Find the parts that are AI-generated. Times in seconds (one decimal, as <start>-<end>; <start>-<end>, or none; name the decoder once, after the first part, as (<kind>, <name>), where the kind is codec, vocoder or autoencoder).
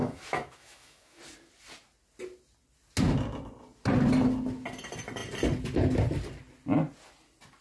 0.0-1.2 (autoencoder, DAC-VAE)